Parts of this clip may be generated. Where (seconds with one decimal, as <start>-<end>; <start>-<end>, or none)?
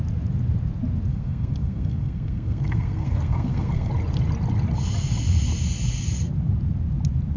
1.1-3.9